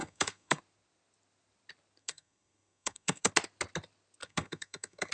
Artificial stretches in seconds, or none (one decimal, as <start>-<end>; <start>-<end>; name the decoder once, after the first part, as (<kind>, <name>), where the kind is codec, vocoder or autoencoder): 0.0-0.6 (codec, SNAC); 2.0-3.3; 4.2-5.1